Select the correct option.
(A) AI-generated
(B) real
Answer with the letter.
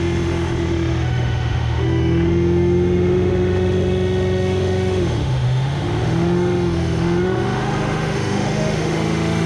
A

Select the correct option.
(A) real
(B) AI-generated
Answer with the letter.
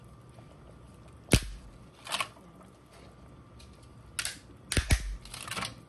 A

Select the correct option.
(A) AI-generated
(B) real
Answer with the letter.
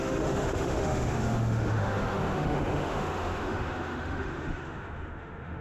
A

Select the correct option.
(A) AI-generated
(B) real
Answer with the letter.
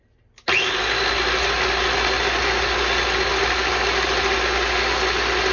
B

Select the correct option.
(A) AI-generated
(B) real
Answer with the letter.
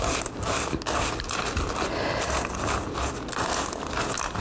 B